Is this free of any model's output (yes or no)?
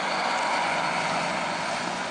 no